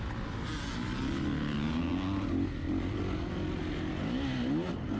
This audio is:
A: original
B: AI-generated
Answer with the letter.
A